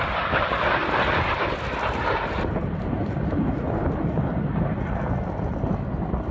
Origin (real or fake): real